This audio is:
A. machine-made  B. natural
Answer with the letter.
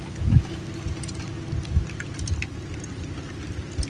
B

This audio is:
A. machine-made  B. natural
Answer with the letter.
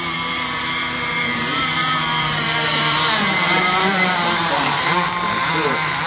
A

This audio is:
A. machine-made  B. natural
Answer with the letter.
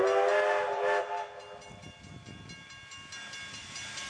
B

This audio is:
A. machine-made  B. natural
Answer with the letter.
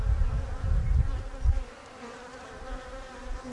B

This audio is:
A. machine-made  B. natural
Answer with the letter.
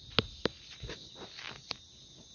B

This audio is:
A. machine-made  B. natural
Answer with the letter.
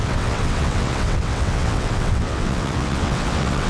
A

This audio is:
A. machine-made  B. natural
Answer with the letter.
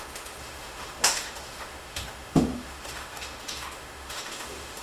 A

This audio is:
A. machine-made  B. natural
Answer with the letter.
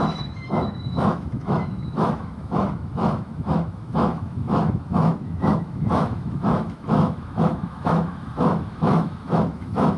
A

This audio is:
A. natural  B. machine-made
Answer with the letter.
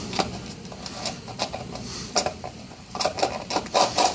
A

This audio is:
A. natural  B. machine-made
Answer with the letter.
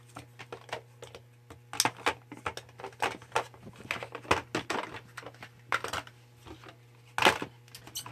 A